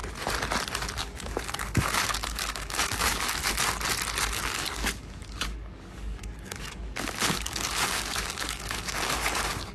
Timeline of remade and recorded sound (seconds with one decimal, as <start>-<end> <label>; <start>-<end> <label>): 0.0-1.0 recorded; 1.0-3.4 remade; 3.4-4.2 recorded; 4.2-9.7 remade